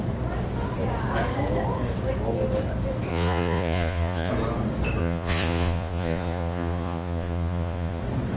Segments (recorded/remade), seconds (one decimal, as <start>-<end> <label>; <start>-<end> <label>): 0.0-3.1 recorded; 3.1-4.3 remade; 4.3-5.0 recorded; 5.0-8.0 remade; 8.0-8.4 recorded